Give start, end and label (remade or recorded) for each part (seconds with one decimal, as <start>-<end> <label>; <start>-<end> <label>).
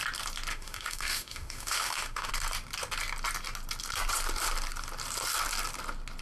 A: 0.0-0.5 recorded; 0.5-2.3 remade; 2.3-6.2 recorded